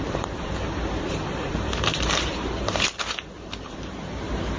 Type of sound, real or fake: fake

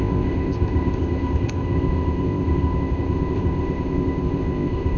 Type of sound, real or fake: fake